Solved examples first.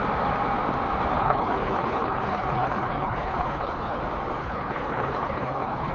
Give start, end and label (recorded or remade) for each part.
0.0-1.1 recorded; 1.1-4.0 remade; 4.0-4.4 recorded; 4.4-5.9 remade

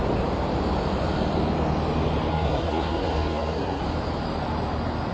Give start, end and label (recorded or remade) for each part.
0.0-2.3 recorded; 2.3-3.8 remade; 3.8-5.1 recorded